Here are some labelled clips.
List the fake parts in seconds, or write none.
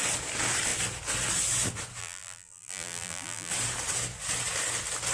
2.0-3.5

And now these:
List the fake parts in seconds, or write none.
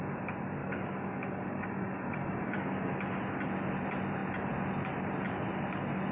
0.6-2.9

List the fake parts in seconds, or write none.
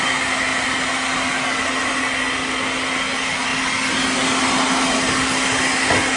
none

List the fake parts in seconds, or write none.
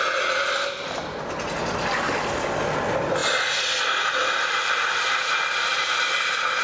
none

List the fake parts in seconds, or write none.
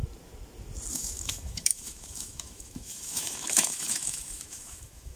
0.9-5.2